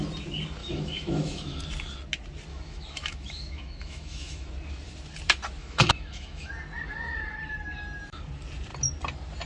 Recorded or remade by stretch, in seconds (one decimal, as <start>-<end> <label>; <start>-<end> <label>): 0.0-0.6 recorded; 0.6-1.6 remade; 1.6-2.5 recorded; 2.5-4.5 remade; 4.5-5.6 recorded; 5.6-6.5 remade; 6.5-9.5 recorded